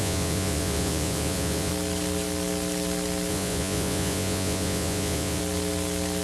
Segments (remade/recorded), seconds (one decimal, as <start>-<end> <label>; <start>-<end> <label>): 0.0-1.7 remade; 1.7-3.3 recorded; 3.3-5.4 remade; 5.4-6.2 recorded

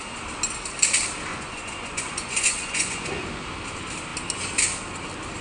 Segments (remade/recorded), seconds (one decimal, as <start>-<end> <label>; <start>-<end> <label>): 0.0-1.3 recorded; 1.3-3.1 remade; 3.1-5.4 recorded